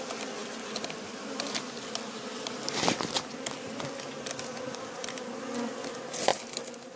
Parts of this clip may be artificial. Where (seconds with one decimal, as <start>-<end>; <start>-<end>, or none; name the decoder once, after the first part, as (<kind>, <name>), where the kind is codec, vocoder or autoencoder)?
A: 0.4-4.6 (vocoder, BigVGAN v2); 6.3-7.0